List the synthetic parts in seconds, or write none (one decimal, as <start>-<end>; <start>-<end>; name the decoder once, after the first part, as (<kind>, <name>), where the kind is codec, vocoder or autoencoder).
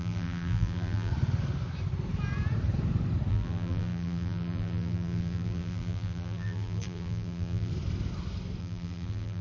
0.0-1.1 (vocoder, BigVGAN v2); 3.3-7.7; 8.6-9.4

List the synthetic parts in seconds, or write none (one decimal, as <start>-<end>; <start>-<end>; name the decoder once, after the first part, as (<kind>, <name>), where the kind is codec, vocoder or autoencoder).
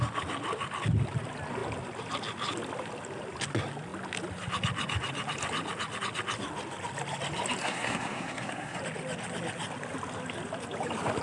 7.6-8.8 (codec, SNAC)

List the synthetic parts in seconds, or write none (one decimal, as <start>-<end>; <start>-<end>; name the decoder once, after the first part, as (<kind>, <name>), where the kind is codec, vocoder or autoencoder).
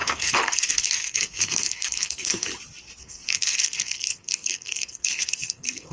0.0-2.5 (codec, SNAC); 3.0-5.9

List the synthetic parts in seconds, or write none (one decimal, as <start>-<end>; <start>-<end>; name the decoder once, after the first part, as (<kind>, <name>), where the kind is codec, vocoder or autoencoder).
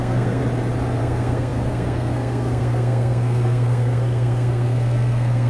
0.0-0.4 (codec, SNAC); 1.0-5.5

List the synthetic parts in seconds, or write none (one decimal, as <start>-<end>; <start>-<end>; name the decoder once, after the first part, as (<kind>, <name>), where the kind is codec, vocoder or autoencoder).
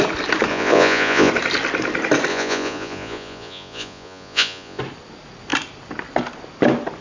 0.5-1.3 (vocoder, Vocos); 2.3-4.8